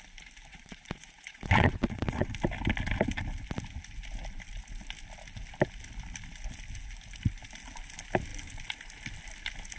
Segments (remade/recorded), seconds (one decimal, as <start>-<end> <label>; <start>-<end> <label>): 0.0-0.5 recorded; 0.5-2.3 remade; 2.3-9.8 recorded